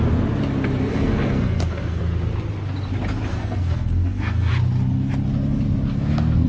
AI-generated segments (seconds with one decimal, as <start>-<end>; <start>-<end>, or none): 0.9-2.0; 3.3-4.5